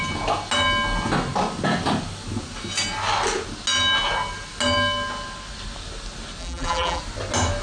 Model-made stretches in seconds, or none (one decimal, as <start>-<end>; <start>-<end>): 6.4-7.0